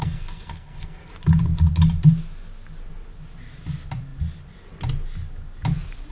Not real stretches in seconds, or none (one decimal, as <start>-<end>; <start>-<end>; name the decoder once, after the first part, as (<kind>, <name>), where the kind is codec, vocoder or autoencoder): 0.0-1.1 (codec, SNAC)